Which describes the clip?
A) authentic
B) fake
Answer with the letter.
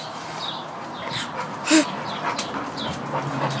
A